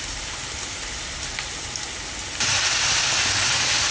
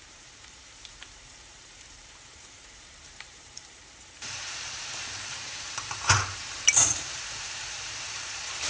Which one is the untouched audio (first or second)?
first